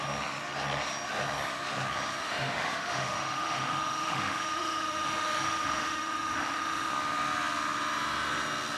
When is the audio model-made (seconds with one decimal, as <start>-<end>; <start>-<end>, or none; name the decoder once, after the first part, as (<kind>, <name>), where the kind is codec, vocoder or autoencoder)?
2.2-6.9 (autoencoder, DAC-VAE)